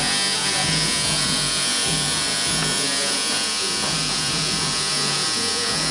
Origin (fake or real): fake